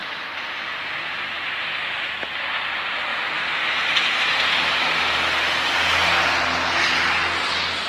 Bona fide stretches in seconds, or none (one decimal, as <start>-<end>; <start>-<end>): 0.0-3.1; 4.4-7.9